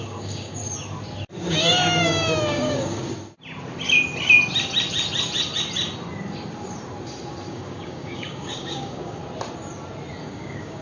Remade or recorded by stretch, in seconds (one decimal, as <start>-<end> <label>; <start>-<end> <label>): 0.0-0.6 remade; 0.6-1.5 recorded; 1.5-3.0 remade; 3.0-7.5 recorded; 7.5-9.2 remade; 9.2-10.2 recorded; 10.2-10.8 remade